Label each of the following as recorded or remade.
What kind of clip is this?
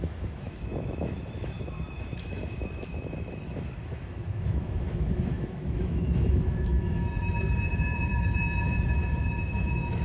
remade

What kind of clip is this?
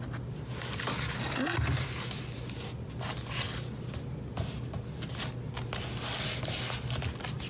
recorded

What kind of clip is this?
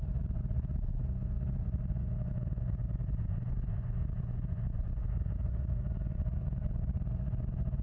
remade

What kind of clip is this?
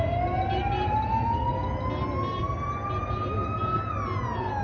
recorded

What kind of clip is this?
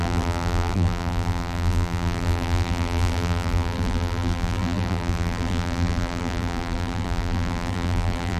remade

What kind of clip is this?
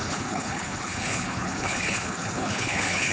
remade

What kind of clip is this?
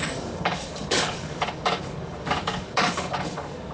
remade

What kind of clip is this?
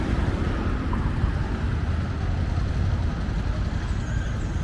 recorded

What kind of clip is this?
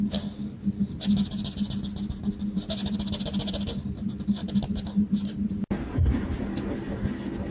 recorded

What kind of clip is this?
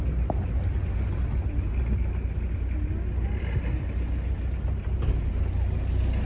recorded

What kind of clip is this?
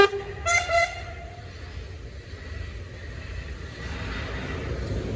recorded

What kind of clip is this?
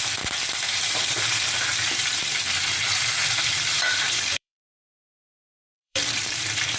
remade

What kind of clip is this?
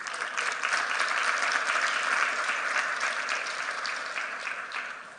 remade